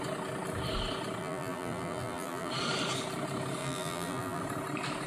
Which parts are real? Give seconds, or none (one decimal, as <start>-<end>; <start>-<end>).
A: 0.0-1.2; 2.5-3.6; 4.4-5.1